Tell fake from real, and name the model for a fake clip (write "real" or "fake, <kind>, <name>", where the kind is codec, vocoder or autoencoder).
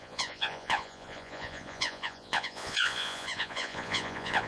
fake, vocoder, Vocos